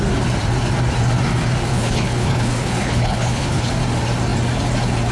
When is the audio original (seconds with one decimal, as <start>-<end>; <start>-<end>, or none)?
0.0-1.7; 3.7-5.1